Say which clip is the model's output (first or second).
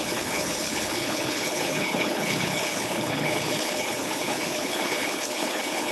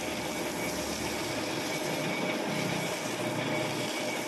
first